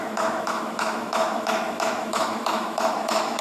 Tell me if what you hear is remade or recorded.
remade